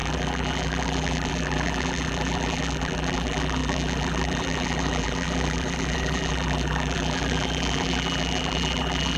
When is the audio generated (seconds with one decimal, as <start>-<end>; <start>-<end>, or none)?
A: 0.0-9.2